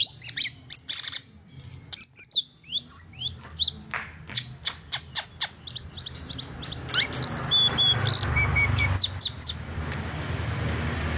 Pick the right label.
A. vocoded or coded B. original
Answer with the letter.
B